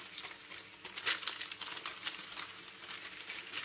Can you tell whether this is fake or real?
real